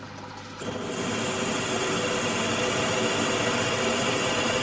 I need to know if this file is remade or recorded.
recorded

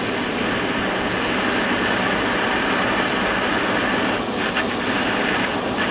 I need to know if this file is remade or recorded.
recorded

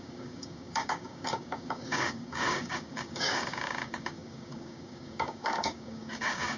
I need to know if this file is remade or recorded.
remade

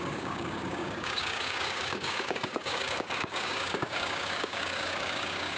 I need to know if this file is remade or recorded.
remade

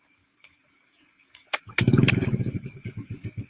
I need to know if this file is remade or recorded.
remade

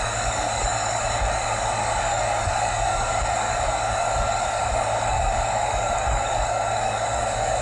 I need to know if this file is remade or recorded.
remade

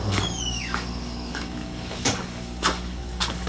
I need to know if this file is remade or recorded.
remade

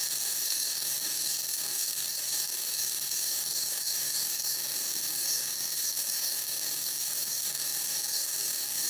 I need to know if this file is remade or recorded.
remade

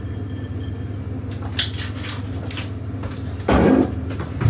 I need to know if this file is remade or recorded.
recorded